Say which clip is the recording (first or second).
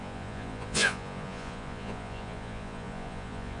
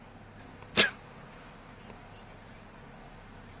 second